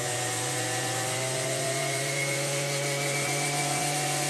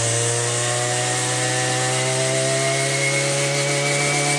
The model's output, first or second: first